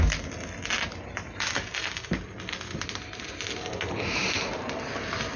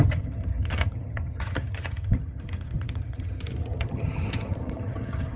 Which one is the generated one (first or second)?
second